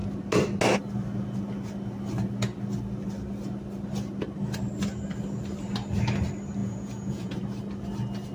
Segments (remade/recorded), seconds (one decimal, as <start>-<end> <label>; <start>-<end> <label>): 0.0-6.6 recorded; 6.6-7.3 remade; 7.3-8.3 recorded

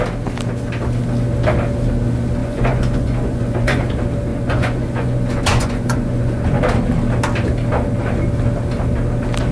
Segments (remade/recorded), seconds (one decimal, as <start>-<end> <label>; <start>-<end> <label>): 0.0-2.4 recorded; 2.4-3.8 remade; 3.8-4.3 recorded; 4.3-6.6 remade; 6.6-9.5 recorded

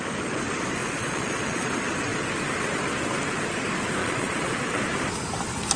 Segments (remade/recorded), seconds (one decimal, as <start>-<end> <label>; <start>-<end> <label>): 0.0-0.8 recorded; 0.8-1.7 remade; 1.7-4.0 recorded; 4.0-4.8 remade; 4.8-5.8 recorded